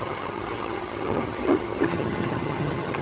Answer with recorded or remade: remade